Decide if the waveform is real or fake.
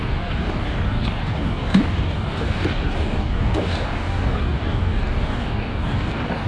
fake